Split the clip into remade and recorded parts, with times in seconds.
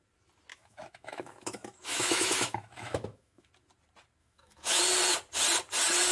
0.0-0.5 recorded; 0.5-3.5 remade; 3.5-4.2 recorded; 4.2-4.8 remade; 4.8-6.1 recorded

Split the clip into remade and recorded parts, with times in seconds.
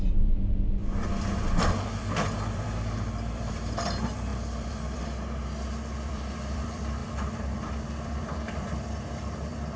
0.0-0.8 remade; 0.8-1.6 recorded; 1.6-9.8 remade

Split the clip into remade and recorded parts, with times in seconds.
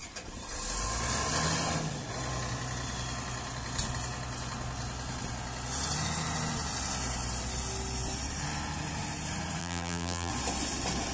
0.0-9.6 recorded; 9.6-10.3 remade; 10.3-11.1 recorded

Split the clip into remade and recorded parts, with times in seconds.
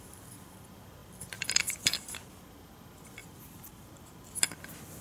0.0-1.0 recorded; 1.0-2.3 remade; 2.3-3.2 recorded; 3.2-4.0 remade; 4.0-5.0 recorded